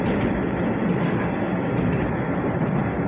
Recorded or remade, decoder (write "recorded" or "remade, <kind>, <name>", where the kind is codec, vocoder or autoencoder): recorded